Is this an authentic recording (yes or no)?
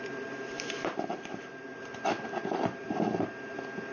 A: no